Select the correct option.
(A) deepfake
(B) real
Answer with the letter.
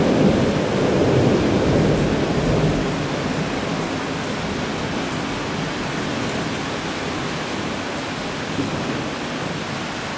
B